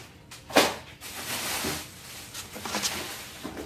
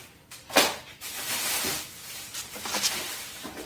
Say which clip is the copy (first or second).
second